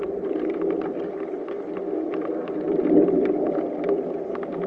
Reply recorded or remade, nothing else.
recorded